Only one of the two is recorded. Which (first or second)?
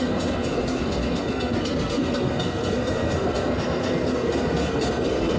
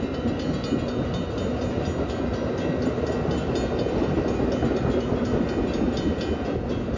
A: second